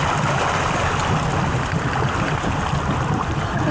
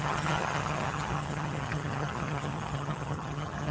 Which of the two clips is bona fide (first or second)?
first